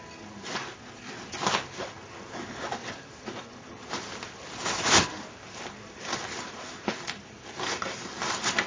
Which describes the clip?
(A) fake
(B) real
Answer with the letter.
B